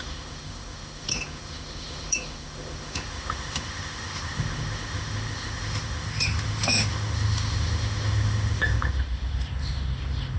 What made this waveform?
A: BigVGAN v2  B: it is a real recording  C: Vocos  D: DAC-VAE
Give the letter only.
D